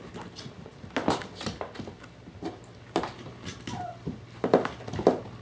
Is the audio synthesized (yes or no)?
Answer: no